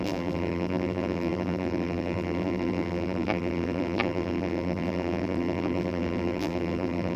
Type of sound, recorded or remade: remade